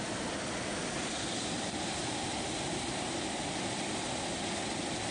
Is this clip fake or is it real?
real